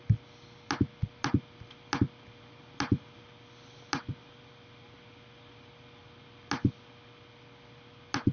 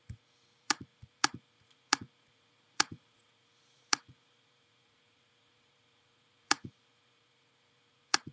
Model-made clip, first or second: second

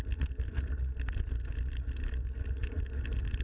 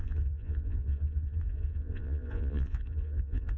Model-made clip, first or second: second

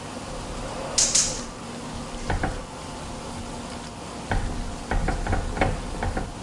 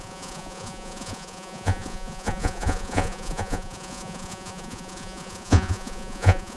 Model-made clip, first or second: second